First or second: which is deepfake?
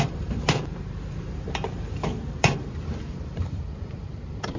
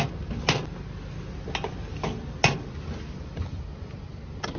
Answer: first